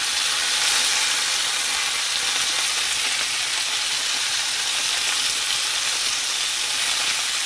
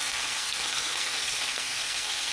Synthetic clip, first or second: second